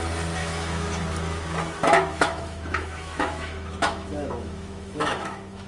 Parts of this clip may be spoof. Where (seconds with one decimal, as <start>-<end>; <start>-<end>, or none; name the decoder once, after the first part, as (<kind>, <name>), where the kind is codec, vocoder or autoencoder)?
0.4-1.0 (autoencoder, DAC-VAE); 2.1-5.7